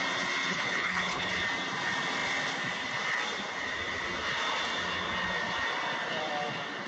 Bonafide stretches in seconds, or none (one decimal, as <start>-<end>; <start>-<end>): 0.0-0.5; 1.3-6.9